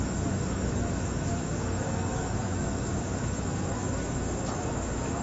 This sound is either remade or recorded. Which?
remade